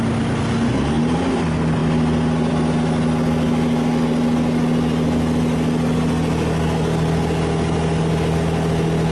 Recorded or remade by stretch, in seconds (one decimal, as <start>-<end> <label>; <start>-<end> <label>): 0.0-9.1 recorded